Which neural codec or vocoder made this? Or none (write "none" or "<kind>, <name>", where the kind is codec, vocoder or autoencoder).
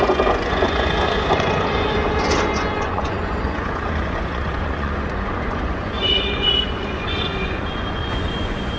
vocoder, Vocos